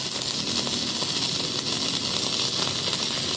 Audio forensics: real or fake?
real